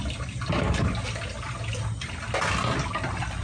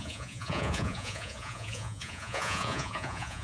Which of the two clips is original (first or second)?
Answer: first